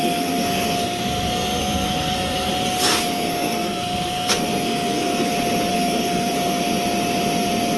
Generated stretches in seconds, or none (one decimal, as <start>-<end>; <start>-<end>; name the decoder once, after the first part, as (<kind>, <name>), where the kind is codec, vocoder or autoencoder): 0.0-2.5 (codec, SNAC); 2.9-5.3; 5.7-6.6